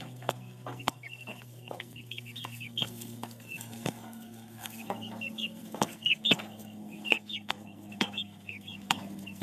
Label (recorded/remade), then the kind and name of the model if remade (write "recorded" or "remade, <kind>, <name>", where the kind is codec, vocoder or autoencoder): remade, codec, SNAC